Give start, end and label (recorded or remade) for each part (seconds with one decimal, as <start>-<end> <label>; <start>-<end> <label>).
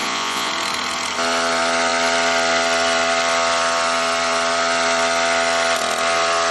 0.0-0.5 remade; 0.5-6.5 recorded